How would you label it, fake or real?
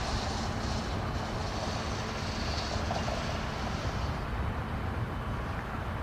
real